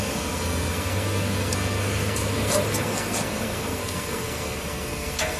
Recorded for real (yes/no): no